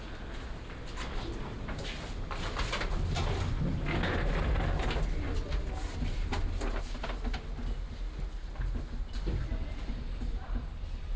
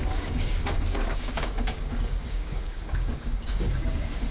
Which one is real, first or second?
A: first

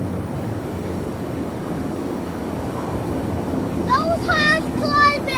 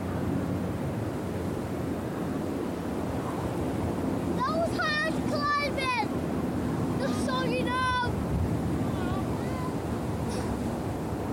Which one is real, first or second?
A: second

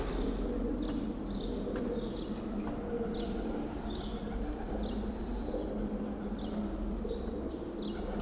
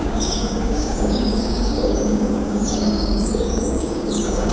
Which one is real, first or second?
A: first